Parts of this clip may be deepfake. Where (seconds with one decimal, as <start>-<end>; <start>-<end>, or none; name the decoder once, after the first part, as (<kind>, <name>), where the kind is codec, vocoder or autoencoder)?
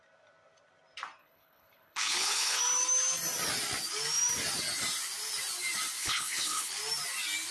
1.2-2.6 (codec, HILCodec); 6.0-6.7